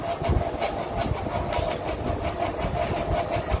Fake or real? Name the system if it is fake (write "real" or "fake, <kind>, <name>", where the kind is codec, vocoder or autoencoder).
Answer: real